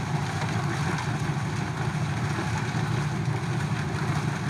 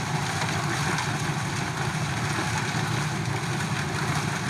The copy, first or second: second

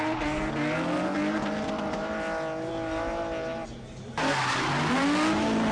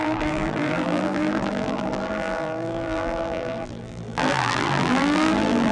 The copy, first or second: second